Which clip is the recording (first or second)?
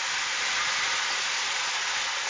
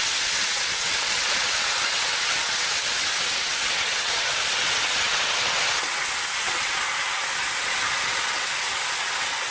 first